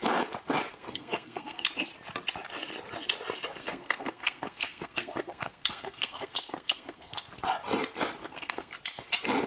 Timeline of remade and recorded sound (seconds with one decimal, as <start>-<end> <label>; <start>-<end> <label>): 0.0-0.7 recorded; 0.7-1.7 remade; 1.7-3.6 recorded; 3.6-7.3 remade; 7.3-8.2 recorded; 8.2-8.7 remade; 8.7-9.5 recorded